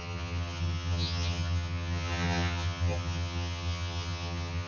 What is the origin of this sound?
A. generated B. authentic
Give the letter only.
A